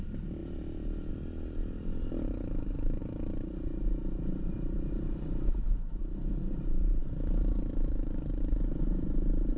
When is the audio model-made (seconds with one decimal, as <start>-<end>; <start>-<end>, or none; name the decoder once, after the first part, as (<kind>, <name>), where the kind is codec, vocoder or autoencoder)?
0.0-9.6 (vocoder, BigVGAN v2)